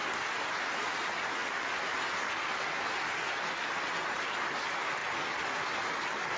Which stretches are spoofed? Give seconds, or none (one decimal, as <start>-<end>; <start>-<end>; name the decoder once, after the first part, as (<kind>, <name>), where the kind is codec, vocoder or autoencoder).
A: none